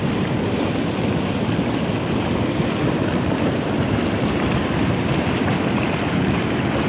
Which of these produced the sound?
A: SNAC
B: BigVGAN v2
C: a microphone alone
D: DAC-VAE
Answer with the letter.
C